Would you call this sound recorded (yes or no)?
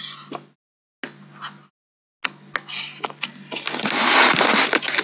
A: yes